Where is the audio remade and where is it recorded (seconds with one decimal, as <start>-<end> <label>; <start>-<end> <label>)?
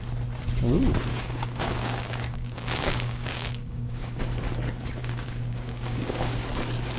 0.0-1.1 recorded; 1.1-4.2 remade; 4.2-5.0 recorded; 5.0-6.4 remade; 6.4-7.0 recorded